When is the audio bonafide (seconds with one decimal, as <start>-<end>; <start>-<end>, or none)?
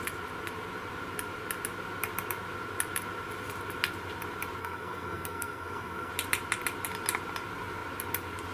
0.0-4.6; 6.1-8.5